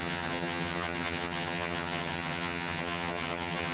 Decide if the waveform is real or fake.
fake